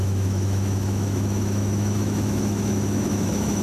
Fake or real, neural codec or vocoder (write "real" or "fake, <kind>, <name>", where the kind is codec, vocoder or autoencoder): fake, autoencoder, DAC-VAE